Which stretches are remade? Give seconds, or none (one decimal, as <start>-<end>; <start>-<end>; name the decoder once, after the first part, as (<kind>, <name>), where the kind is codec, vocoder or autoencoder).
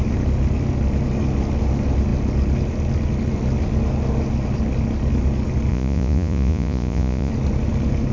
5.7-7.3 (vocoder, Vocos)